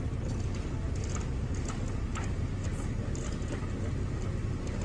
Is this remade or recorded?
recorded